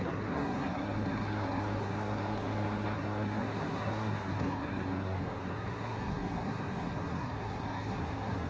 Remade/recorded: remade